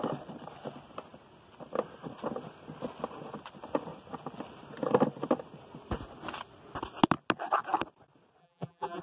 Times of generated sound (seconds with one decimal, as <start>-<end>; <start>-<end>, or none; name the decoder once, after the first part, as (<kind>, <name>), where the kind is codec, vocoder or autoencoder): 8.4-9.0 (vocoder, BigVGAN v2)